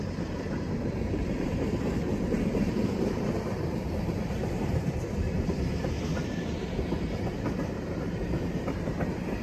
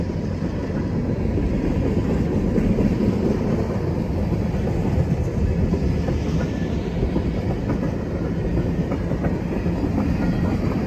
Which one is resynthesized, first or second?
first